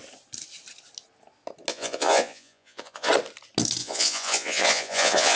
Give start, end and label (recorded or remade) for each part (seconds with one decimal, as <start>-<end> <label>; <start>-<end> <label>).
0.0-1.7 recorded; 1.7-3.1 remade; 3.1-3.8 recorded; 3.8-5.4 remade